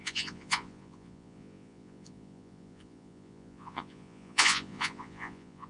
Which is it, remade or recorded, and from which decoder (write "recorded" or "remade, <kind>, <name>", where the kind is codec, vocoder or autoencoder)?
remade, vocoder, Vocos